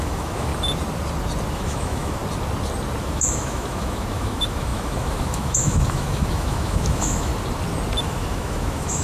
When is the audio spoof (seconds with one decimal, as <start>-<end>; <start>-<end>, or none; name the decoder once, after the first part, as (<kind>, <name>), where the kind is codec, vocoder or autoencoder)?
0.0-0.5 (autoencoder, DAC-VAE); 1.5-2.2; 3.0-7.3; 8.0-9.0